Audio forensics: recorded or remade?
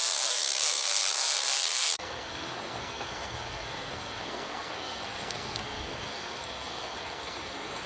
remade